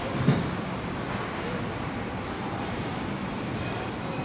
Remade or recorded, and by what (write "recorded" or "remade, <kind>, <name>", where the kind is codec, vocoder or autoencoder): recorded